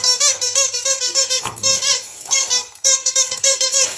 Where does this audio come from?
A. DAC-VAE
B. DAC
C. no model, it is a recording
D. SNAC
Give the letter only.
D